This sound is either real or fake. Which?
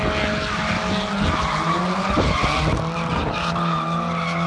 real